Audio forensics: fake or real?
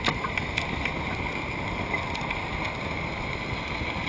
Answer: real